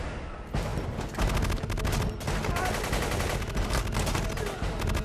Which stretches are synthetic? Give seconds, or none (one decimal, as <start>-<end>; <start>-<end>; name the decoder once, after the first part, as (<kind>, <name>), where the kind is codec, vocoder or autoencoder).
none